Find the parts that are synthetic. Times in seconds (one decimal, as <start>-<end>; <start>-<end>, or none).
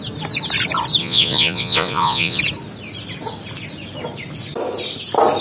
1.0-2.4